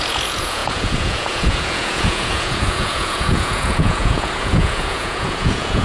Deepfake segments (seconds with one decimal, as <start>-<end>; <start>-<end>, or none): 0.0-5.8